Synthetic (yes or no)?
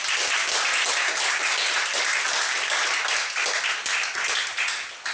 no